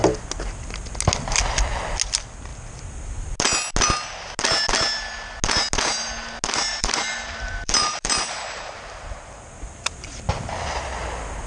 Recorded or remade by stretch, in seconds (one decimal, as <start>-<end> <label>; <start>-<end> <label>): 0.0-6.7 recorded; 6.7-10.3 remade; 10.3-11.5 recorded